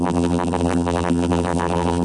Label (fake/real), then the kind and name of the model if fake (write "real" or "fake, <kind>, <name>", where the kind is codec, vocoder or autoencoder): fake, vocoder, BigVGAN v2